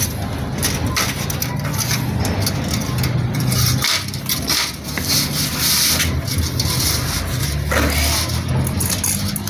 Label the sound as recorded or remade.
recorded